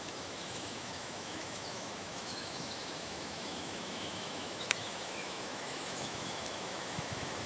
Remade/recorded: remade